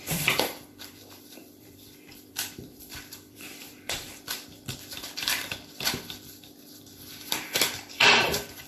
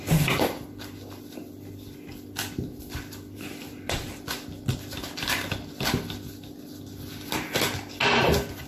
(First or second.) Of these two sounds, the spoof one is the first